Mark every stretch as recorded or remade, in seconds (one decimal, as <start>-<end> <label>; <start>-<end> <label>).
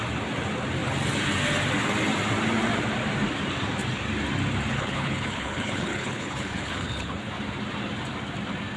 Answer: 0.0-4.7 recorded; 4.7-7.3 remade; 7.3-8.8 recorded